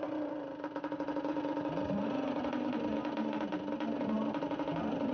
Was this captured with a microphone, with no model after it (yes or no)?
yes